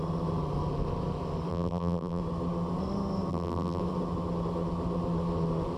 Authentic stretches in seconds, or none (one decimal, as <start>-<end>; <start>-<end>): 0.0-1.5; 2.2-3.3; 3.8-5.8